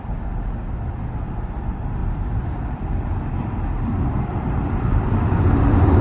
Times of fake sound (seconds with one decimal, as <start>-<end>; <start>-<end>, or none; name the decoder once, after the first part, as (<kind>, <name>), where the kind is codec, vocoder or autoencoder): 2.0-5.6 (vocoder, BigVGAN v2)